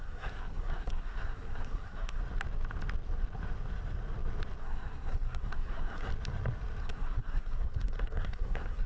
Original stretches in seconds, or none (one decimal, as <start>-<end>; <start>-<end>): 2.2-4.6; 6.1-6.8